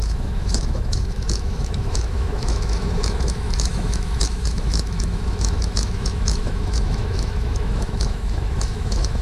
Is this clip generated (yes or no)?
yes